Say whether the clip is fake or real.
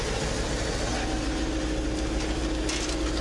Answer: real